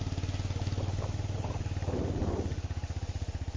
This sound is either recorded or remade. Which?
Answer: recorded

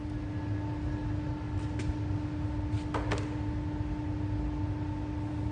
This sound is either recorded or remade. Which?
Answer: recorded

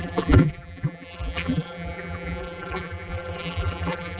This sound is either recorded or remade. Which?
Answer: remade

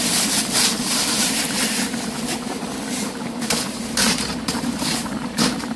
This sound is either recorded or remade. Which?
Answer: remade